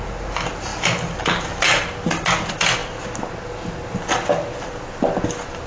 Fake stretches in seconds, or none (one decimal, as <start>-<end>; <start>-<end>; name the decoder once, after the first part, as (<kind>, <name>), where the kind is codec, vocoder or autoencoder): none